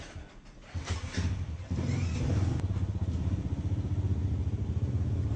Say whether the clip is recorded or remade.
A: recorded